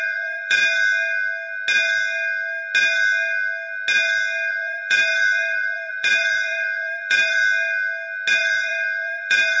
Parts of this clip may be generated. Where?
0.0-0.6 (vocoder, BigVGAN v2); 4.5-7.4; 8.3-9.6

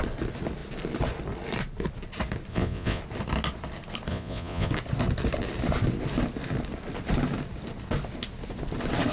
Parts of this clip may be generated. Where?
2.5-3.0 (vocoder, Vocos); 4.1-4.7

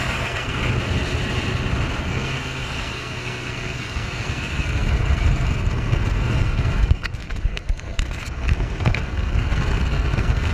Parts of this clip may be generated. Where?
0.0-0.6 (codec, SNAC); 2.0-10.5